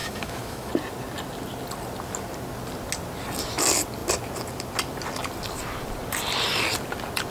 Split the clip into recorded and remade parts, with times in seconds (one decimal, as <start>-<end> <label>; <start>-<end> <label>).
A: 0.0-0.7 remade; 0.7-7.3 recorded